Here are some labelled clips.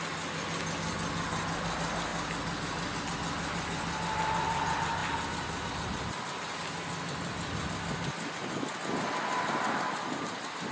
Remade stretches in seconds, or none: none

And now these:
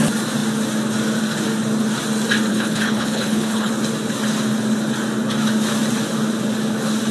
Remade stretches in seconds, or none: 2.5-3.7 (codec, HILCodec)

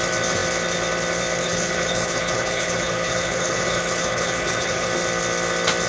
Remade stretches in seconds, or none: 1.4-4.9 (codec, HILCodec)

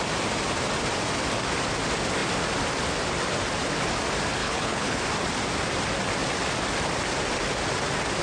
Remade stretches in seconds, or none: 4.4-5.0 (codec, HILCodec)

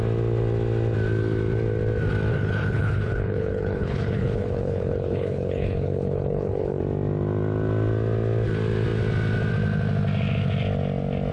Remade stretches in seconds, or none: 2.3-6.8 (codec, HILCodec)

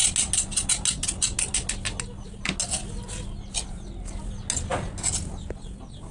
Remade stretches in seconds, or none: none

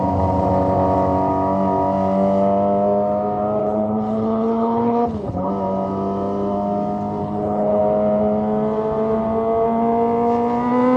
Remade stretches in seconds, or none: 3.6-5.5 (codec, HILCodec); 7.2-7.8